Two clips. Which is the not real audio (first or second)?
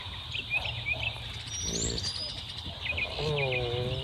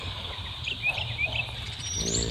second